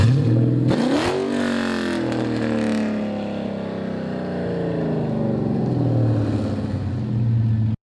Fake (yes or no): no